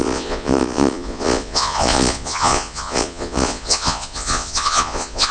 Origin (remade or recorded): remade